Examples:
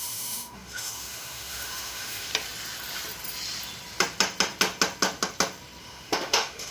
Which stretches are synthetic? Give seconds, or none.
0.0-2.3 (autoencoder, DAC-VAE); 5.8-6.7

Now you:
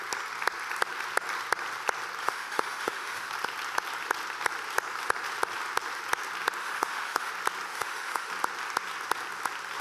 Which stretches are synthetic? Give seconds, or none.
2.2-3.3 (autoencoder, DAC-VAE); 6.6-7.3; 7.7-8.3

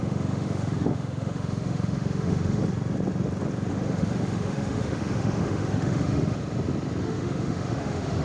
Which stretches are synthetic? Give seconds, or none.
0.0-2.6 (autoencoder, DAC-VAE); 3.7-6.4; 7.0-8.2

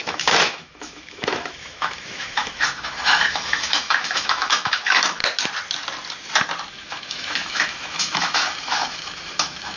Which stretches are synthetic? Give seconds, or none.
0.0-5.2 (autoencoder, DAC-VAE); 6.7-9.8

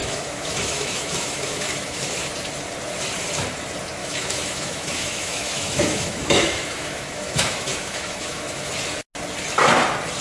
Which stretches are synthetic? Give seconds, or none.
0.0-2.3 (autoencoder, DAC-VAE); 4.0-8.7

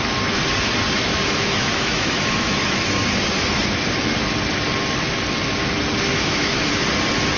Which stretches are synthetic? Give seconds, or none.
1.1-3.0 (autoencoder, DAC-VAE); 6.1-6.7

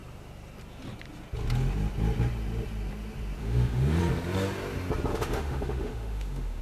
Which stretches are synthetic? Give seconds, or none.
3.4-4.0 (autoencoder, DAC-VAE); 5.1-6.6